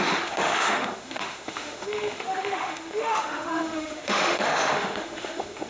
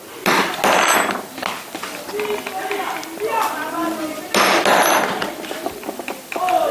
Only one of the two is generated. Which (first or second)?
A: first